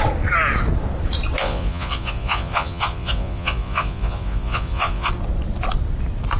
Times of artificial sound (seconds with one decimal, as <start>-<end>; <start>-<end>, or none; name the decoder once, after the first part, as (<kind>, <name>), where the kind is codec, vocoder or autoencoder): 1.4-5.1 (vocoder, Vocos)